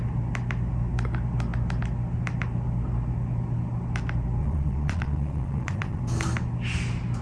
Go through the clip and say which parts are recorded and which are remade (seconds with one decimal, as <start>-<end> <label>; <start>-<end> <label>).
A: 0.0-4.4 recorded; 4.4-6.0 remade; 6.0-7.2 recorded

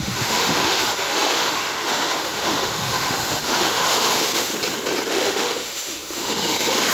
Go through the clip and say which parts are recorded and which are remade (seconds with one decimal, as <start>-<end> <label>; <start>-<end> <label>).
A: 0.0-4.5 remade; 4.5-5.1 recorded; 5.1-6.9 remade

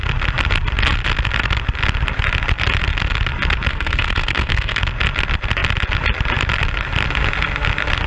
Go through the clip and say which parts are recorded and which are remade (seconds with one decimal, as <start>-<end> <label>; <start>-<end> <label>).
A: 0.0-3.7 recorded; 3.7-4.8 remade; 4.8-8.1 recorded